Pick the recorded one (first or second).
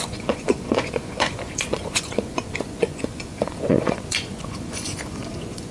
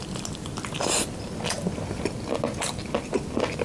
second